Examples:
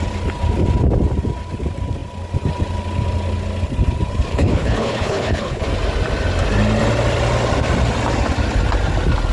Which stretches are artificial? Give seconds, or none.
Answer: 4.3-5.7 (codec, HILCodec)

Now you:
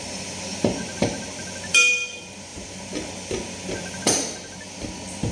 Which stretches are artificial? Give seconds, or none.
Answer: none

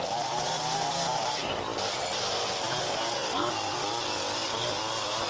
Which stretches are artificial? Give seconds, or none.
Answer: none

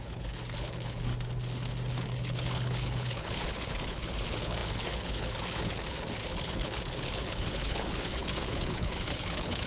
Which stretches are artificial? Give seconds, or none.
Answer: 0.0-1.1 (codec, HILCodec); 1.9-9.7